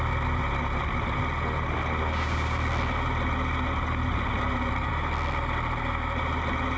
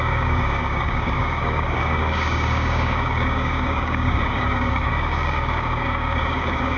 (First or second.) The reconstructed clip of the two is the second